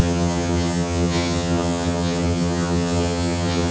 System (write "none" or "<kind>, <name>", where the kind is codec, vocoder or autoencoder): vocoder, HiFi-GAN